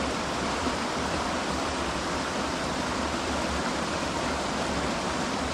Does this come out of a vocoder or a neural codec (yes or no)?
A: yes